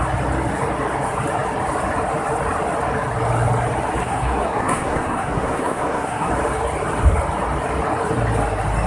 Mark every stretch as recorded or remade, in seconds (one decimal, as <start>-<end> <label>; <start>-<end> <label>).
0.0-4.0 recorded; 4.0-6.3 remade; 6.3-8.9 recorded